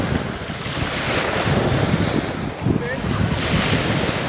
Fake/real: real